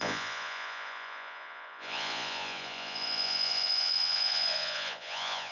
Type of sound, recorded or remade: remade